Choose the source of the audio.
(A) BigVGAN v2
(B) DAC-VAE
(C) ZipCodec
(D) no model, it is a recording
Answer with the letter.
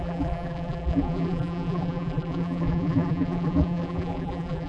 A